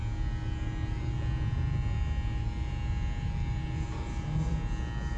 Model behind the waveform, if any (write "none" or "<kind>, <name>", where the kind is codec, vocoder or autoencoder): none